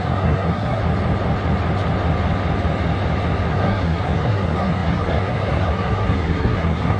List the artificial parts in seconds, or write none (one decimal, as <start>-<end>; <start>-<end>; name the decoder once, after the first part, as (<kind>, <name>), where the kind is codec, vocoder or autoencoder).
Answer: 0.0-0.8 (codec, SNAC); 3.5-7.0